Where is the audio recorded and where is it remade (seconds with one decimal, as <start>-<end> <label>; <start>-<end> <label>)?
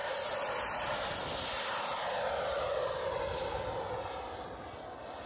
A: 0.0-0.5 remade; 0.5-5.3 recorded